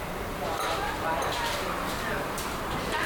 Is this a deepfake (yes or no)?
yes